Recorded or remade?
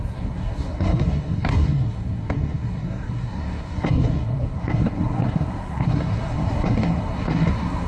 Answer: remade